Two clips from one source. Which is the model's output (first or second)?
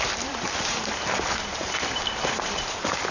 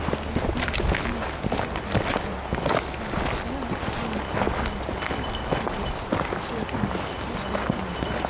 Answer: first